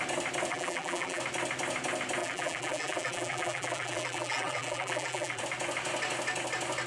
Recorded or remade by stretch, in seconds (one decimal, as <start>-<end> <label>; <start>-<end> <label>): 0.0-0.5 recorded; 0.5-1.2 remade; 1.2-2.2 recorded; 2.2-5.4 remade; 5.4-6.9 recorded